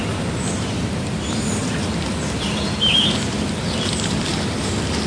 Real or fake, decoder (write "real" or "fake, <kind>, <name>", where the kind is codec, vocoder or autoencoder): real